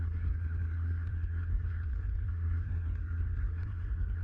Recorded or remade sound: remade